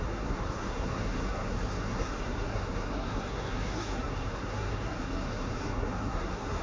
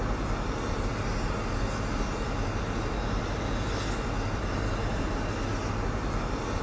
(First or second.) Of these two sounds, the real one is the second